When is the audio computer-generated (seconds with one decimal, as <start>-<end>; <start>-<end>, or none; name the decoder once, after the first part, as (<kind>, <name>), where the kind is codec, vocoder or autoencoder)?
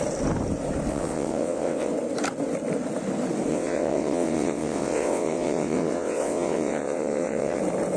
0.9-1.9 (vocoder, WaveNeXt); 3.5-7.6